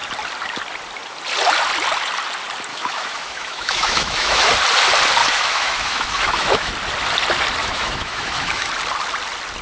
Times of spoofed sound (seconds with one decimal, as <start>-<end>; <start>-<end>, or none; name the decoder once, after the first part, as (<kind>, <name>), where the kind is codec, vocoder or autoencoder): 2.7-4.5 (autoencoder, DAC-VAE); 5.2-6.7; 7.6-8.7